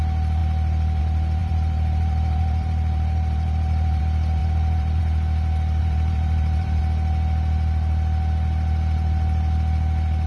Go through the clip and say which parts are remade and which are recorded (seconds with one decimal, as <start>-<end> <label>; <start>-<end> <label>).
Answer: 0.0-1.4 recorded; 1.4-4.0 remade; 4.0-4.4 recorded; 4.4-5.0 remade; 5.0-5.8 recorded; 5.8-6.8 remade; 6.8-10.3 recorded